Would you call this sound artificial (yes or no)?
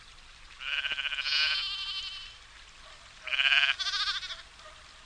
no